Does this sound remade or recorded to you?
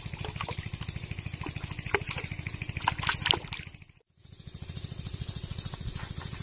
recorded